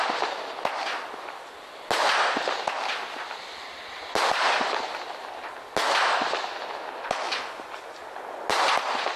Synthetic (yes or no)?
no